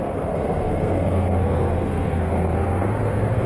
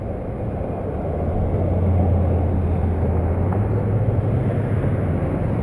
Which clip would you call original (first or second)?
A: second